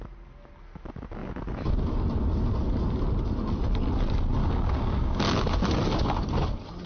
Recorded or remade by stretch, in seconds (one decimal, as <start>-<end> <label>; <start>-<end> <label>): 0.0-4.4 recorded; 4.4-5.2 remade; 5.2-6.9 recorded